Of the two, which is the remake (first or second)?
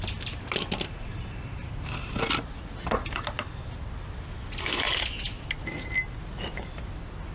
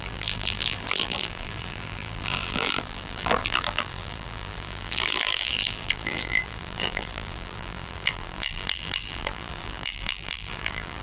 second